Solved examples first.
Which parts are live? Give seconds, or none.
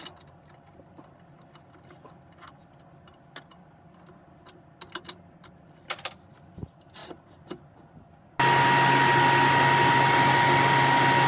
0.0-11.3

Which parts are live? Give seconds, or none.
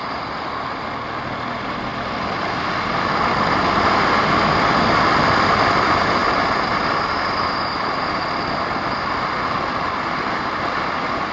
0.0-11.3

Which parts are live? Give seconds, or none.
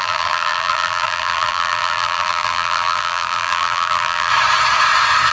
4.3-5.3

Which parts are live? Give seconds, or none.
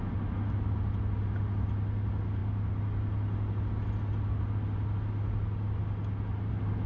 0.0-6.9